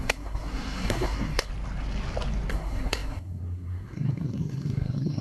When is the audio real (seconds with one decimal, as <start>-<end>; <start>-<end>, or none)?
1.5-2.5